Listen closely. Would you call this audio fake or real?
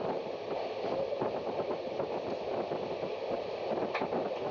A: real